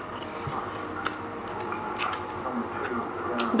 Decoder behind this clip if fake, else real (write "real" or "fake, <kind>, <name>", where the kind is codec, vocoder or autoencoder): real